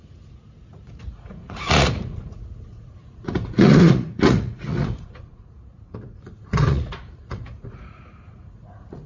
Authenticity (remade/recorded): remade